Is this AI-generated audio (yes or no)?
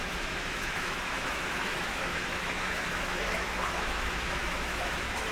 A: yes